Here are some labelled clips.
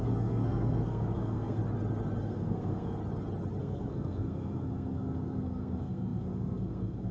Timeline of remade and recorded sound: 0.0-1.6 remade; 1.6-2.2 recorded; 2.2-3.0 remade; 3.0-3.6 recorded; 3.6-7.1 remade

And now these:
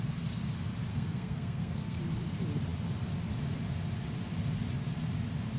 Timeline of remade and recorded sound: 0.0-0.9 recorded; 0.9-2.0 remade; 2.0-5.6 recorded

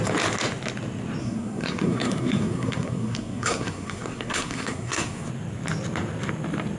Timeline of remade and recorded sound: 0.0-1.2 recorded; 1.2-5.3 remade; 5.3-6.8 recorded

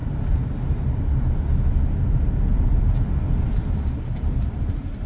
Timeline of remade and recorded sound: 0.0-5.1 recorded

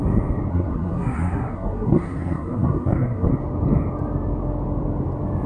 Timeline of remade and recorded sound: 0.0-0.5 recorded; 0.5-3.3 remade; 3.3-5.5 recorded

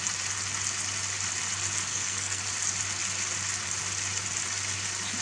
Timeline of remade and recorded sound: 0.0-1.9 recorded; 1.9-2.4 remade; 2.4-5.2 recorded

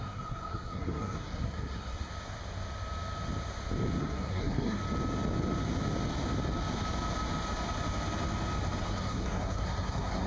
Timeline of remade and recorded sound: 0.0-2.1 remade; 2.1-4.0 recorded; 4.0-4.8 remade; 4.8-8.8 recorded; 8.8-10.3 remade